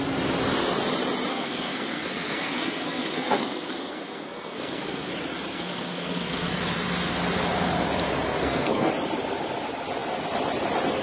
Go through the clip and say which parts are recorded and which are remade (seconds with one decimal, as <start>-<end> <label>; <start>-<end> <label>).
0.0-1.3 recorded; 1.3-5.1 remade; 5.1-5.5 recorded; 5.5-6.6 remade; 6.6-8.4 recorded; 8.4-8.9 remade; 8.9-11.0 recorded